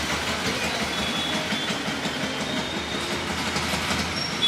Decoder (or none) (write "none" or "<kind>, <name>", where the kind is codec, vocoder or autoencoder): none